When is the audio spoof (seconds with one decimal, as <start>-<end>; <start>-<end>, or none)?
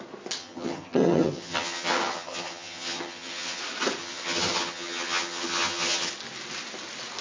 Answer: 0.4-3.6; 4.0-6.1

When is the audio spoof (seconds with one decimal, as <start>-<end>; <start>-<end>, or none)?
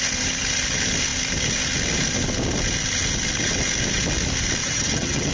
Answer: 4.6-5.3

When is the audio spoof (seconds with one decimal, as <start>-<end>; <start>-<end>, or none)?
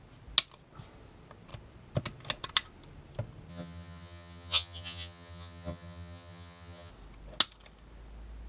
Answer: 3.5-6.9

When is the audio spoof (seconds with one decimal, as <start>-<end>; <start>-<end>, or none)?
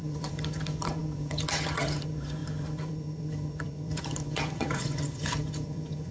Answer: 0.0-6.1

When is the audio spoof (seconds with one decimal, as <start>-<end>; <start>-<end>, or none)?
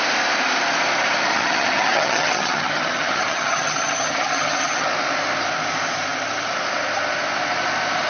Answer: 1.3-4.9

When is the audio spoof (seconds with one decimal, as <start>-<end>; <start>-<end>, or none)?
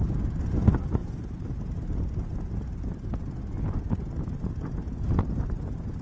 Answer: none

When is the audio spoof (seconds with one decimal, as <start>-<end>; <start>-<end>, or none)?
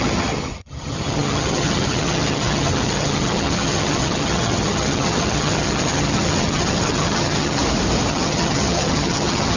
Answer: 0.0-7.6; 8.1-9.6